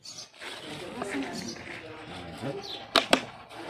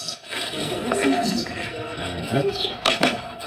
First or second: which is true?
first